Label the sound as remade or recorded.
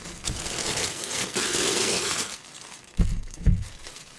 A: remade